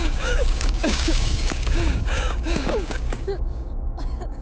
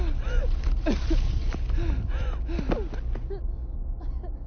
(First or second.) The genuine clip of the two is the second